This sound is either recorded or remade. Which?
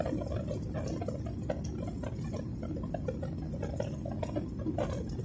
recorded